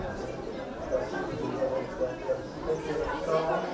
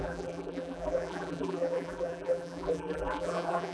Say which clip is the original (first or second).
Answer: first